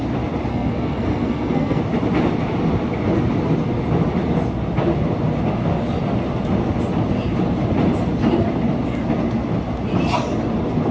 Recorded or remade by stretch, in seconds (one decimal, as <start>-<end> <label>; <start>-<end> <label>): 0.0-0.5 recorded; 0.5-1.8 remade; 1.8-10.9 recorded